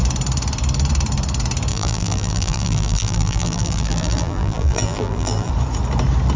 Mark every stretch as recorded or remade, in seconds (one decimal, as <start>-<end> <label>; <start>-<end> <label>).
0.0-1.7 recorded; 1.7-5.5 remade; 5.5-6.4 recorded